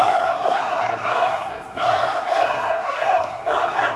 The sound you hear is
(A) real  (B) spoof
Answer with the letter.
B